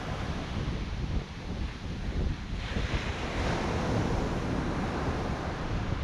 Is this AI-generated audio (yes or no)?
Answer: no